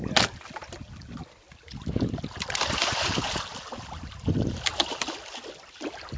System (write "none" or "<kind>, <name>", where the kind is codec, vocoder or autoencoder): none